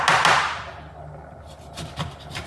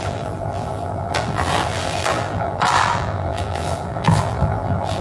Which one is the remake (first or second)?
second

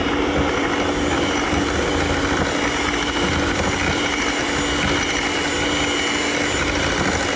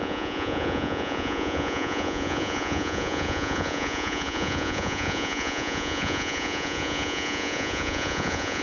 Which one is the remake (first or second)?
second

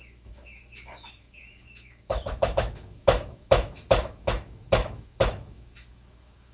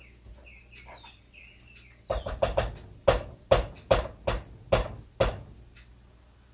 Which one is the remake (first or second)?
first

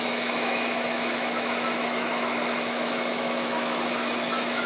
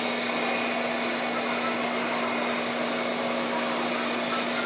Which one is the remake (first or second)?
first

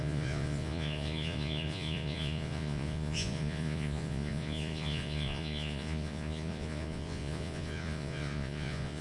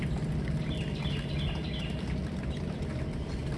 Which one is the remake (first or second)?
first